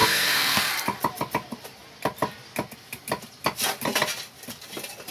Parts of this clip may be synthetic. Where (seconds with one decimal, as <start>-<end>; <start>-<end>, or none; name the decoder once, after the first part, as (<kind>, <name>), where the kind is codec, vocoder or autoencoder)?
0.0-0.7 (codec, SNAC)